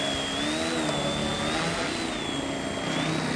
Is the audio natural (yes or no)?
yes